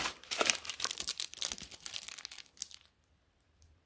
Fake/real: real